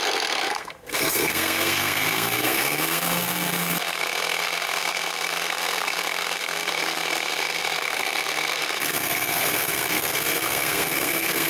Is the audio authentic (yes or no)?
no